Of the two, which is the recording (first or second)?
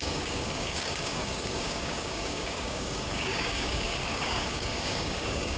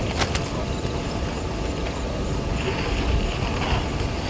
second